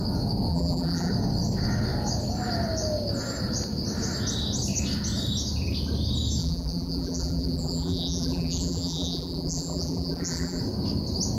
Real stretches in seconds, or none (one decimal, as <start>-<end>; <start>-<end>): 0.0-0.5; 1.1-6.4; 10.6-11.4